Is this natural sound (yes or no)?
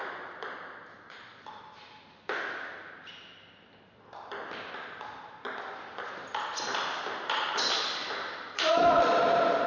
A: yes